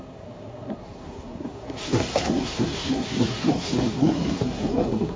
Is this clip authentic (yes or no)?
no